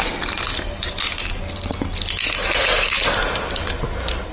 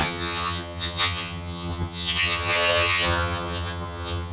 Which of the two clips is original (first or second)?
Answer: first